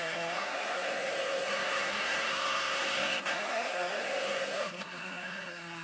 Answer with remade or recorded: remade